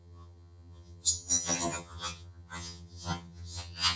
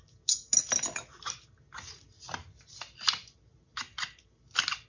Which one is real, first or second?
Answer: second